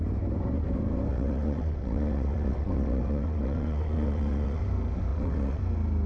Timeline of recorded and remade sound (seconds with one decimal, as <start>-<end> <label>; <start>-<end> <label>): 0.0-1.1 recorded; 1.1-4.6 remade; 4.6-5.1 recorded; 5.1-5.6 remade; 5.6-6.1 recorded